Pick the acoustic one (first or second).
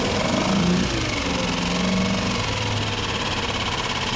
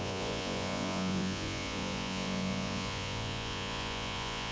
first